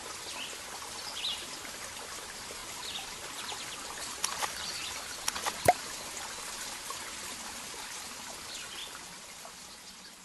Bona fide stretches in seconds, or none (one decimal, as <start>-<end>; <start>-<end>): 0.0-10.2